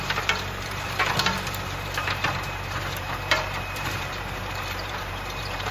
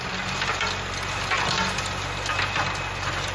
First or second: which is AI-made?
first